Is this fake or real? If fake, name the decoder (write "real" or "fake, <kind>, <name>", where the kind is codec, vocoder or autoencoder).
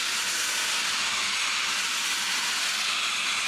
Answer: real